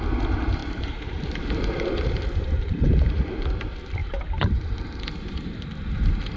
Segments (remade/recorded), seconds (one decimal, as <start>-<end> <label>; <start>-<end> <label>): 0.0-0.6 recorded; 0.6-3.5 remade; 3.5-4.0 recorded; 4.0-5.6 remade; 5.6-6.4 recorded